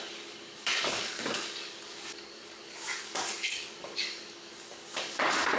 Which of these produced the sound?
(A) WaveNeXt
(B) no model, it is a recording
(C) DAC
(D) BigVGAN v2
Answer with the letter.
C